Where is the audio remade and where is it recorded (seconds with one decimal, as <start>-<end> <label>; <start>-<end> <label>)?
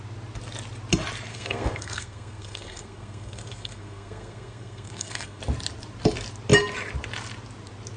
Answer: 0.0-1.3 recorded; 1.3-5.4 remade; 5.4-8.0 recorded